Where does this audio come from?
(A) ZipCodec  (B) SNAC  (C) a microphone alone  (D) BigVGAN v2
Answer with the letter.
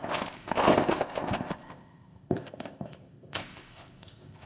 A